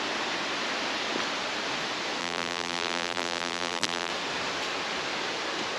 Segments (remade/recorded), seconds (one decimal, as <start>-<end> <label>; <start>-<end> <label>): 0.0-2.2 recorded; 2.2-4.1 remade; 4.1-5.8 recorded